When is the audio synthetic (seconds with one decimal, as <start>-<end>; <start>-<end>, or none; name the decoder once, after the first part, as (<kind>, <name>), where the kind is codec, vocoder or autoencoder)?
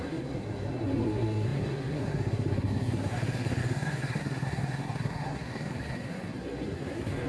0.0-7.3 (codec, SNAC)